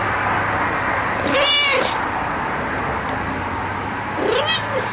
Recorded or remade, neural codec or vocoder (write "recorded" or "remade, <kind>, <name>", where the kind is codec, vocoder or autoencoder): recorded